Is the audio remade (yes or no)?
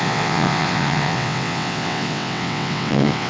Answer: yes